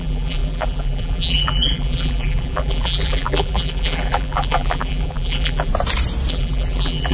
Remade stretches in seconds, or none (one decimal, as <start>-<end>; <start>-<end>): 0.0-5.7; 6.3-7.1